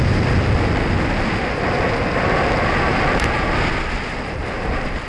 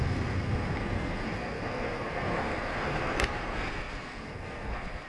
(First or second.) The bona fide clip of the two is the first